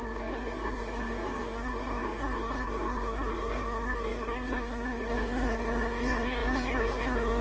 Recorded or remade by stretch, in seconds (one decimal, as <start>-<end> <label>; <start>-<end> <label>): 0.0-7.4 remade